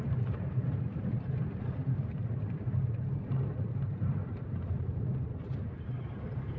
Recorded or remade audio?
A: remade